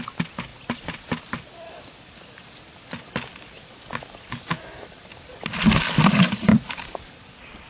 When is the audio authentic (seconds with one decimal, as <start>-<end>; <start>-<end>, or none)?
0.0-6.5; 7.1-7.7